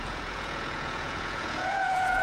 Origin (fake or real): fake